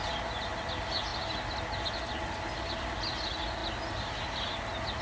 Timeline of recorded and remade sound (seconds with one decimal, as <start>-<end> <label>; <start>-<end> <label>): 0.0-5.0 recorded

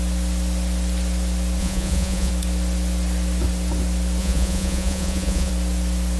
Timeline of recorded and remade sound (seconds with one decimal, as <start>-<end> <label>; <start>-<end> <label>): 0.0-1.6 recorded; 1.6-2.3 remade; 2.3-4.2 recorded; 4.2-5.5 remade; 5.5-6.2 recorded

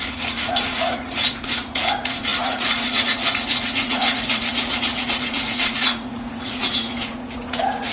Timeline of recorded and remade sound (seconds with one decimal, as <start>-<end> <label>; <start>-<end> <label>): 0.0-7.9 remade